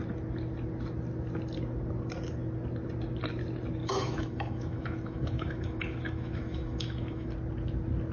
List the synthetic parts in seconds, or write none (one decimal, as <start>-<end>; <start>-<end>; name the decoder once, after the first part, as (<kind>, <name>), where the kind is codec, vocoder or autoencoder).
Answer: 3.8-7.3 (autoencoder, DAC-VAE)